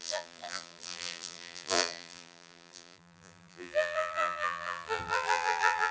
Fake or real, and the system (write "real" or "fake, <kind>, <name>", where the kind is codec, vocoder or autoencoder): fake, vocoder, BigVGAN v2